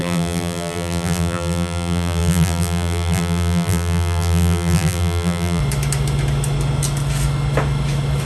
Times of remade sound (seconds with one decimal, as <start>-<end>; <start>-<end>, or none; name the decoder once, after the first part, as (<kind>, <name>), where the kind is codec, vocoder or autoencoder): 0.0-5.6 (vocoder, BigVGAN v2)